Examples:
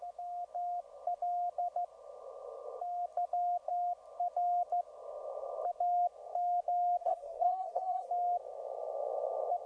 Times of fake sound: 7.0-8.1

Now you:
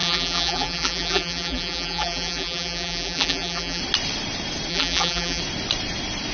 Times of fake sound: 0.0-3.8; 4.7-5.4

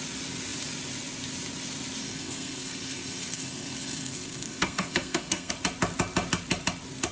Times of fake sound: 2.0-5.5

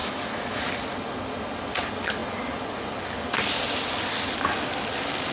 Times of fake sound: 0.0-0.6